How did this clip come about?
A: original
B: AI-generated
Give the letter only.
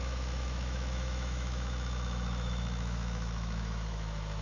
B